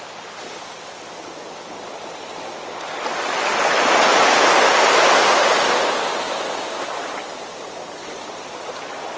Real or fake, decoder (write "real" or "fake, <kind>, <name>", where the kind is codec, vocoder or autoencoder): real